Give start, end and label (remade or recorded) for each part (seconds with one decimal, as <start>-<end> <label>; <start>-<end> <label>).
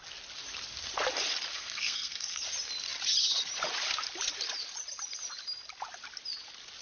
0.0-1.5 recorded; 1.5-2.4 remade; 2.4-6.8 recorded